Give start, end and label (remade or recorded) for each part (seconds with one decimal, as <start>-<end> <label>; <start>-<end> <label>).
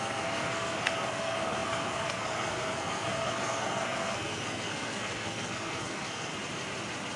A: 0.0-6.3 remade; 6.3-7.2 recorded